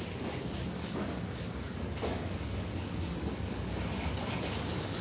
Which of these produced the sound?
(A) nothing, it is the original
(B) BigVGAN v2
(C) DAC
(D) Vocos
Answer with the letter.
C